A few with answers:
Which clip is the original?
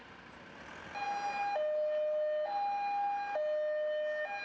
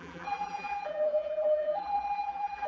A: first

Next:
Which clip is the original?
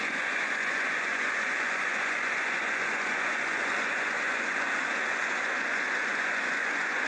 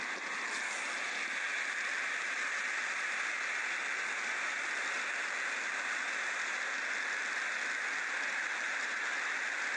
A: second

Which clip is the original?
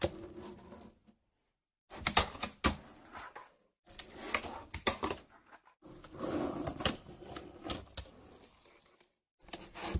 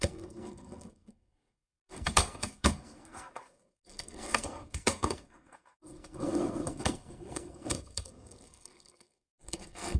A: first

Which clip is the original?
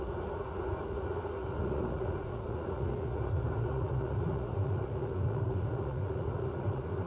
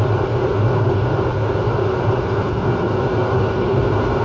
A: second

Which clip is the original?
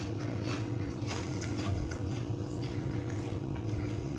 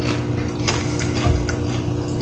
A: second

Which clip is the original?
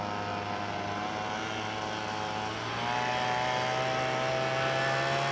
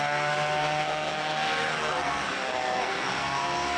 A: first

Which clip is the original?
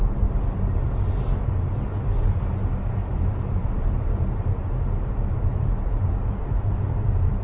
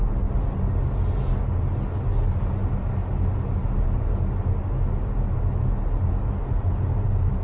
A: second